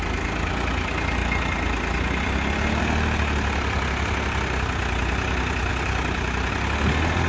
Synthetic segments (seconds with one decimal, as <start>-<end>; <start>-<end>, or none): none